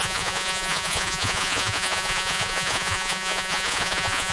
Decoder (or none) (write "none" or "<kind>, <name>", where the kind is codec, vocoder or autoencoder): vocoder, Vocos